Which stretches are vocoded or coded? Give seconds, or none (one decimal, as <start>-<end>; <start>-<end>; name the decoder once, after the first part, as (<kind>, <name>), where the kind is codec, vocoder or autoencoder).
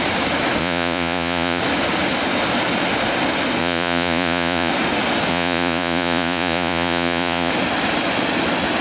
0.6-1.6 (vocoder, Vocos); 3.6-4.7; 5.3-7.5